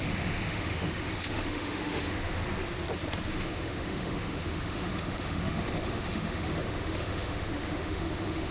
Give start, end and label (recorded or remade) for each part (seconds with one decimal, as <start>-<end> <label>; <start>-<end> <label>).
0.0-2.4 remade; 2.4-3.3 recorded; 3.3-8.5 remade